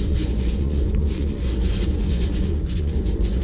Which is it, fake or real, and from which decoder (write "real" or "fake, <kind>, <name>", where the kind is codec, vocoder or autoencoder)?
fake, vocoder, Vocos